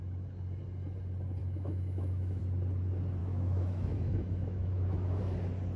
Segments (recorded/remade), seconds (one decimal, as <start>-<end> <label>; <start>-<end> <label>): 0.0-1.4 recorded; 1.4-2.4 remade; 2.4-3.2 recorded; 3.2-5.2 remade; 5.2-5.8 recorded